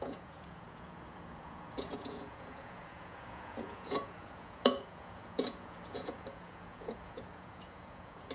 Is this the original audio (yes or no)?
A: no